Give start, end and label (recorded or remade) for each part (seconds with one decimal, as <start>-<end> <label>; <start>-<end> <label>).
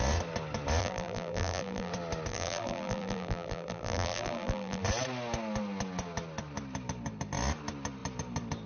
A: 0.0-0.8 recorded; 0.8-1.9 remade; 1.9-2.3 recorded; 2.3-4.8 remade; 4.8-8.7 recorded